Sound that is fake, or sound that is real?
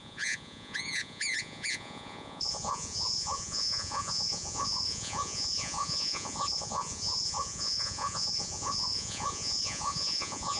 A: fake